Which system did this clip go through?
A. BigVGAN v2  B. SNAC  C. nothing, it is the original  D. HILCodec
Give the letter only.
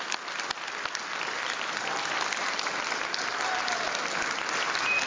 C